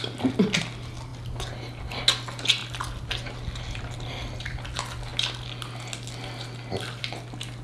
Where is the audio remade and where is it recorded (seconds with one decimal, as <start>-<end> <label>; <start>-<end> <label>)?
0.0-7.6 recorded